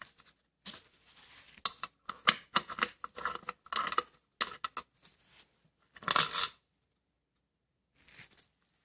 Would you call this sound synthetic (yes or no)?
no